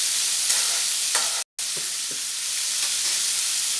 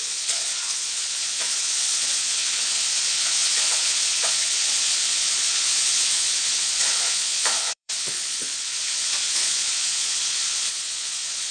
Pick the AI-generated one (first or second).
second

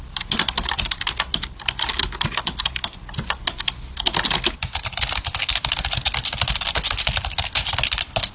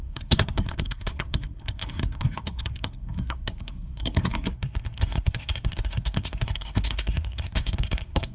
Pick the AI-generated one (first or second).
second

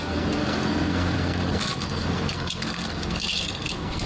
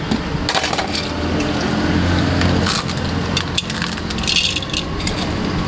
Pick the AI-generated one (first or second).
first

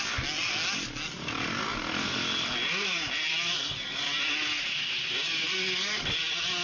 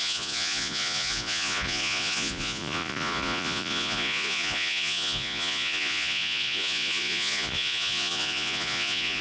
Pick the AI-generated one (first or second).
second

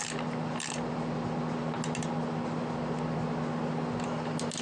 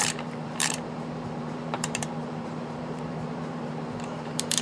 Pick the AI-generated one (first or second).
second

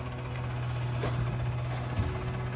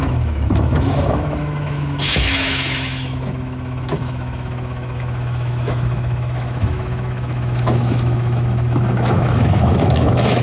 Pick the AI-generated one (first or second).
second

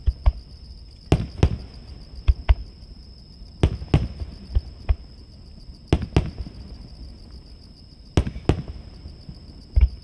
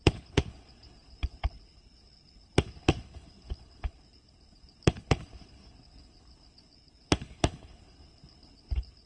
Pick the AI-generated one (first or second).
second